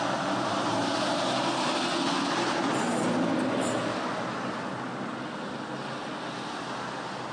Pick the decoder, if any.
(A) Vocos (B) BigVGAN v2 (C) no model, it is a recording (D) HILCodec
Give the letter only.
C